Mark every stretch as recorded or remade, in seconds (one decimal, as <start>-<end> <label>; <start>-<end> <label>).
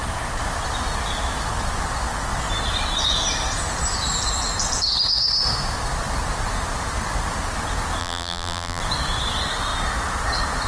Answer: 0.0-8.0 recorded; 8.0-8.8 remade; 8.8-10.7 recorded